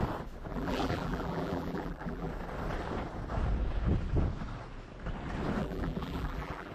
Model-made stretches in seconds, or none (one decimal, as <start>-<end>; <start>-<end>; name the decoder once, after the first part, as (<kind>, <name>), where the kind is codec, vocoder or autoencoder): 0.5-2.3 (vocoder, BigVGAN v2); 5.6-6.7